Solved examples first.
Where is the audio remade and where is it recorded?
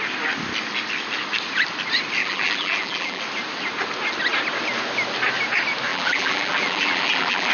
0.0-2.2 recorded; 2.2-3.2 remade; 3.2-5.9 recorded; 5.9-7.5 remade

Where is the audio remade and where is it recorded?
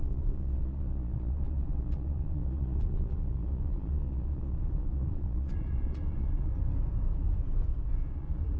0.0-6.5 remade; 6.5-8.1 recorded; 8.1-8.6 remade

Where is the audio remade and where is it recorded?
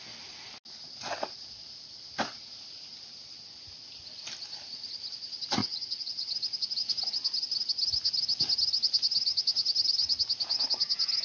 0.0-5.6 recorded; 5.6-6.3 remade; 6.3-11.2 recorded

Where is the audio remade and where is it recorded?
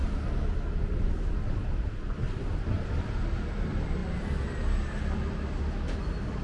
0.0-6.4 recorded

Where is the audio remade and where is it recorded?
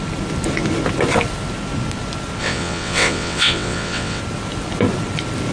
0.0-2.4 recorded; 2.4-4.2 remade; 4.2-5.5 recorded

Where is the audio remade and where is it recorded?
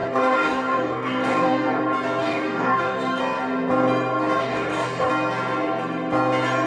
0.0-1.8 remade; 1.8-2.2 recorded; 2.2-3.2 remade; 3.2-4.4 recorded; 4.4-5.1 remade; 5.1-6.7 recorded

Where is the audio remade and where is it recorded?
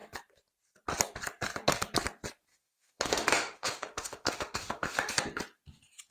0.0-2.5 recorded; 2.5-5.1 remade; 5.1-6.1 recorded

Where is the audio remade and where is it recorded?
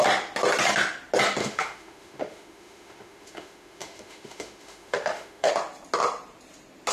0.0-1.4 recorded; 1.4-5.5 remade; 5.5-6.9 recorded